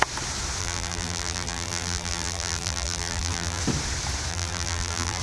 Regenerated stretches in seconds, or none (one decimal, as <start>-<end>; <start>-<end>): 0.6-3.6; 4.3-5.2